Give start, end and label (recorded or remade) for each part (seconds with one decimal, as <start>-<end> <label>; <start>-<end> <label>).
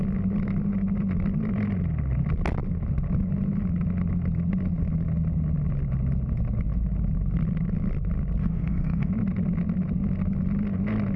0.0-8.4 recorded; 8.4-9.1 remade; 9.1-11.2 recorded